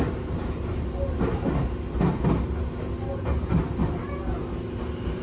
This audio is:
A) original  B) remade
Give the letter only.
A